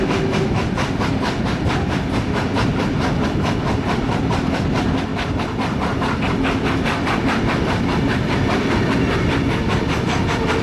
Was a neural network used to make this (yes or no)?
no